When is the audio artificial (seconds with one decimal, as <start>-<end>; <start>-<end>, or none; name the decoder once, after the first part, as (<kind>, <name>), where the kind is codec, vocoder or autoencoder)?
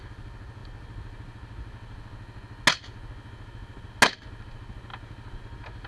none